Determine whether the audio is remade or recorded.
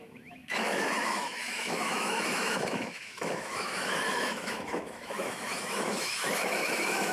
remade